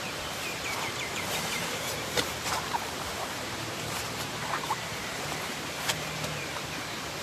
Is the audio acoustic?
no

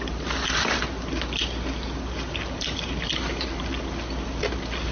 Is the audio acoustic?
yes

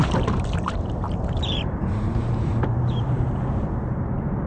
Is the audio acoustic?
no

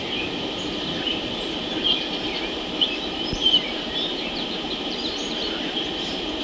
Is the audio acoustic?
no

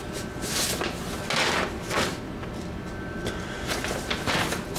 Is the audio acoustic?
yes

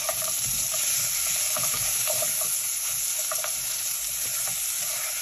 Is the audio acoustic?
no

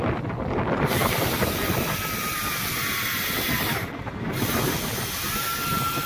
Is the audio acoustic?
yes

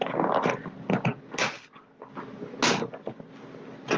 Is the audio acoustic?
yes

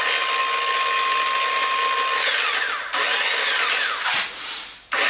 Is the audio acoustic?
yes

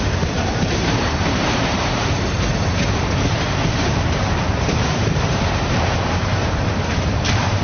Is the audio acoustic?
no